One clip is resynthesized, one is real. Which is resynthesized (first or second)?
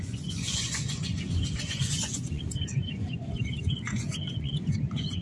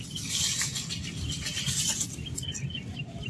first